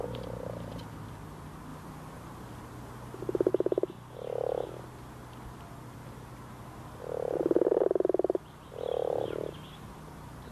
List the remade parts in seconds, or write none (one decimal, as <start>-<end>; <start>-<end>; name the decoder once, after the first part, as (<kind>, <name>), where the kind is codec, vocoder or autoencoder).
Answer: none